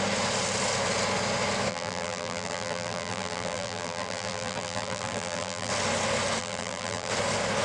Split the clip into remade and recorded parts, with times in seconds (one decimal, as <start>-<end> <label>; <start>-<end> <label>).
0.0-1.7 recorded; 1.7-5.7 remade; 5.7-6.4 recorded; 6.4-7.1 remade; 7.1-7.6 recorded